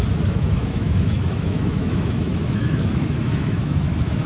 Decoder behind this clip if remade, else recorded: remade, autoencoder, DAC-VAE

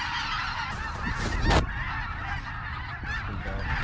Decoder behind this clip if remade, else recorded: recorded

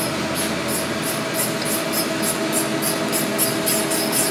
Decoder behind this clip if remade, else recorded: recorded